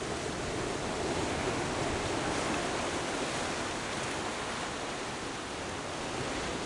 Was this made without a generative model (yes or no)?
yes